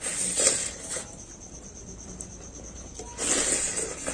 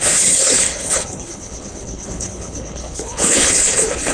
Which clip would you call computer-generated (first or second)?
second